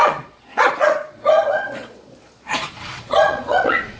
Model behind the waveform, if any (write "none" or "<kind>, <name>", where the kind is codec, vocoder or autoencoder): vocoder, Vocos